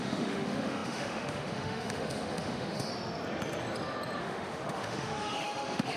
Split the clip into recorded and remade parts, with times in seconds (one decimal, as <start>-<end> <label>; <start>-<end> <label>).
0.0-2.9 remade; 2.9-4.2 recorded; 4.2-6.0 remade